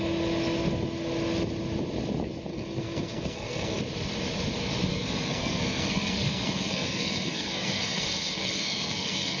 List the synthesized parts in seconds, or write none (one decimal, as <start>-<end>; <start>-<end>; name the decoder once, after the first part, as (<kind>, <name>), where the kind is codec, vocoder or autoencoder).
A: 2.5-3.8 (codec, SNAC); 4.9-9.4